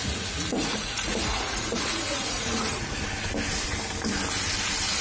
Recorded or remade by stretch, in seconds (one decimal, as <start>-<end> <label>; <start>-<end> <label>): 0.0-3.0 remade; 3.0-5.0 recorded